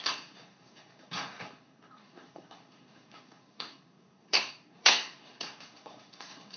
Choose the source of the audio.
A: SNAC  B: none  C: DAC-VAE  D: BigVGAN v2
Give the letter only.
A